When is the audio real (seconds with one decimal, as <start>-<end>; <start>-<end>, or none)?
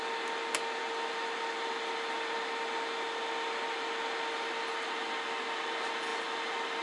0.0-6.8